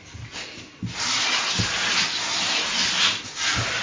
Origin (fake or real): real